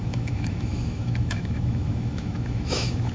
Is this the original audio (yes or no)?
no